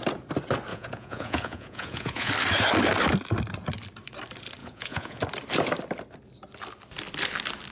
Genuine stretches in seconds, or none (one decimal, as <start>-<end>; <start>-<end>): 0.0-0.7; 2.3-4.6; 5.2-7.7